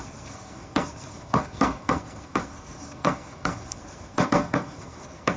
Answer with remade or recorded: remade